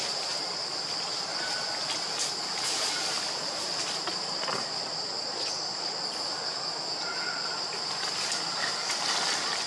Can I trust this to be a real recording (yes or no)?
yes